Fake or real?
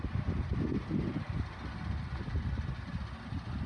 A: real